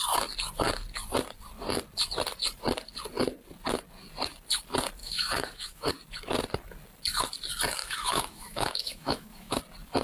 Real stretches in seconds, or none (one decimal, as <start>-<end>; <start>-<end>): 0.0-5.0; 5.9-7.8; 9.6-10.0